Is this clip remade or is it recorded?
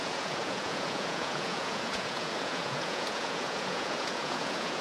remade